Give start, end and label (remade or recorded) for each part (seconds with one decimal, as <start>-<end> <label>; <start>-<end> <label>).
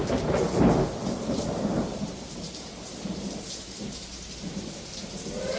0.0-0.9 recorded; 0.9-5.6 remade